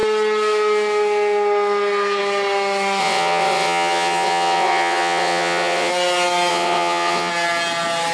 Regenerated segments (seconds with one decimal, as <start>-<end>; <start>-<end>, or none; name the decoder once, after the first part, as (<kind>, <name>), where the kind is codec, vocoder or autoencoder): 3.0-5.9 (vocoder, WaveNeXt); 6.5-7.3